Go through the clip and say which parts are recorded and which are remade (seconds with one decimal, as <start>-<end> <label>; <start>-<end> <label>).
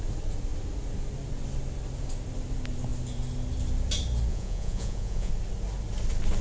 0.0-4.3 recorded; 4.3-5.3 remade; 5.3-6.4 recorded